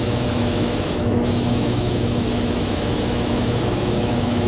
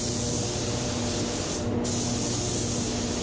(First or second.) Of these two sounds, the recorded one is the second